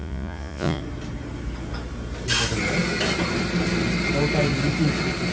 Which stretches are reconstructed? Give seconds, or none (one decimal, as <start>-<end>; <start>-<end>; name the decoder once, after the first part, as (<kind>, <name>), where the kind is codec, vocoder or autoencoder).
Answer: 0.0-0.8 (vocoder, Vocos)